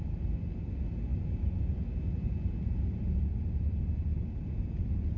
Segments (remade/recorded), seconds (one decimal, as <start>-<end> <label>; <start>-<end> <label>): 0.0-5.2 recorded

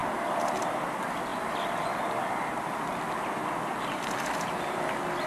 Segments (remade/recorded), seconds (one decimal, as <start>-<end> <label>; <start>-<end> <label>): 0.0-5.3 recorded

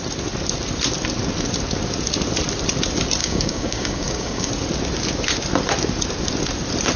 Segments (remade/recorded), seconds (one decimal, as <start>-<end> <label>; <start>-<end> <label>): 0.0-3.2 recorded; 3.2-4.5 remade; 4.5-7.0 recorded

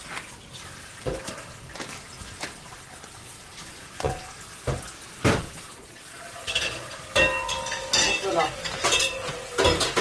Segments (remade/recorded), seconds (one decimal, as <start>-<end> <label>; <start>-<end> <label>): 0.0-3.2 recorded; 3.2-4.4 remade; 4.4-5.4 recorded; 5.4-7.0 remade; 7.0-10.0 recorded

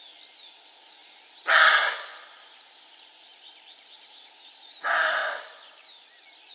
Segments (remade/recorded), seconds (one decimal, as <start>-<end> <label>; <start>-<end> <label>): 0.0-6.5 recorded

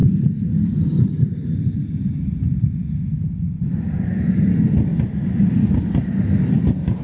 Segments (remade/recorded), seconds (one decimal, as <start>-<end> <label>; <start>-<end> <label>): 0.0-7.0 recorded

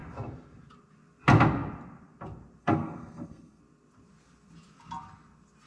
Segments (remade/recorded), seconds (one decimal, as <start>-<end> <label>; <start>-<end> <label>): 0.0-2.6 recorded; 2.6-3.6 remade; 3.6-5.7 recorded

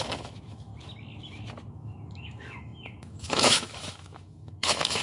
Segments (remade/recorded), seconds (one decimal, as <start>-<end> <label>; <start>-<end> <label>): 0.0-0.7 remade; 0.7-1.7 recorded; 1.7-5.0 remade